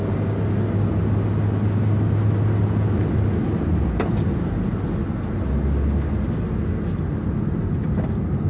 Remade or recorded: recorded